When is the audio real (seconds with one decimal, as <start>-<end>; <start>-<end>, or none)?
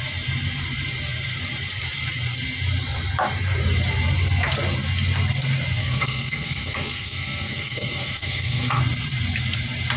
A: 0.0-5.8; 8.8-10.0